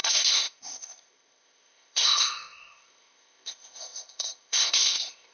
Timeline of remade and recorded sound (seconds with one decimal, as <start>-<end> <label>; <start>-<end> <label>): 0.0-5.3 remade